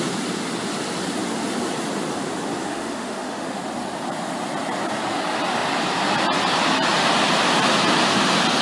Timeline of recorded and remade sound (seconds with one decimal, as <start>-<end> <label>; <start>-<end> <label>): 0.0-2.6 recorded; 2.6-3.6 remade; 3.6-8.6 recorded